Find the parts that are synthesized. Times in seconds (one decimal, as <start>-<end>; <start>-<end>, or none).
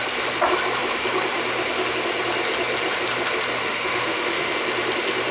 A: 3.6-4.5